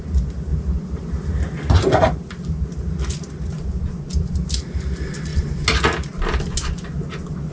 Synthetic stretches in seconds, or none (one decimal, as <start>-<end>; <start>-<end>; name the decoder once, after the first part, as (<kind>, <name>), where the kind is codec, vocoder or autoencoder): none